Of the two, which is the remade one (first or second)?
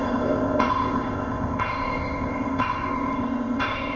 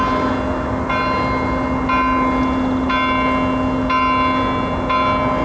first